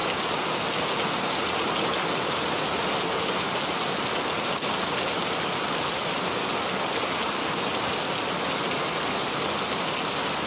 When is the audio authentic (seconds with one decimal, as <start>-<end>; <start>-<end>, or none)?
0.0-10.5

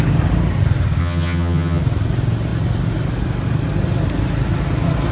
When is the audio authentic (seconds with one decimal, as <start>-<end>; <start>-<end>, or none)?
0.0-1.0; 1.8-5.1

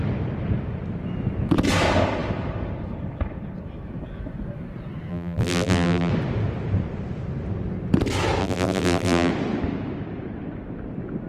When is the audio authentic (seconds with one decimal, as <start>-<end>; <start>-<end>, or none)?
0.0-5.1; 6.1-8.4; 9.3-11.3